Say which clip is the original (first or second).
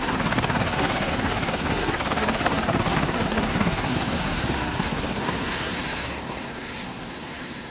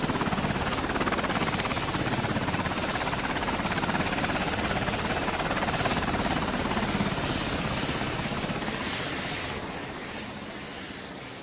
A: second